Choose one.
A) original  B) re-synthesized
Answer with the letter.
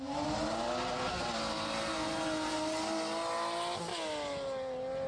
A